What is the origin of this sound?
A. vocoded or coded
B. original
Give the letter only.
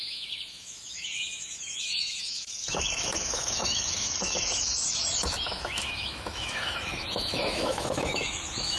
A